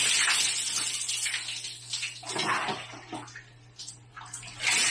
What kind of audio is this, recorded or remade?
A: recorded